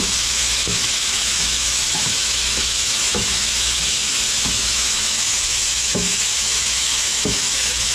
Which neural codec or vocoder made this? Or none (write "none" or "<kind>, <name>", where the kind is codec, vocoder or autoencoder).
autoencoder, DAC-VAE